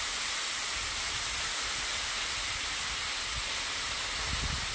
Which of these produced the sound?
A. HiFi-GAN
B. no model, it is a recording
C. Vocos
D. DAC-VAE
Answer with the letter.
B